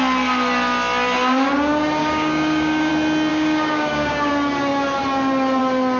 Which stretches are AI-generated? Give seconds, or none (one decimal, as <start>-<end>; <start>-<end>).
2.0-2.9; 3.3-4.3